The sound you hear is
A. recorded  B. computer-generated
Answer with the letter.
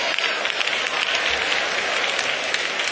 A